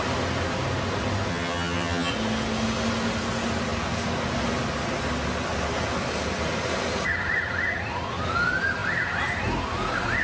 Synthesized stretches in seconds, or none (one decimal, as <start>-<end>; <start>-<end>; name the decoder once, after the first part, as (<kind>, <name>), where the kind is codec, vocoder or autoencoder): 1.3-2.1 (vocoder, HiFi-GAN)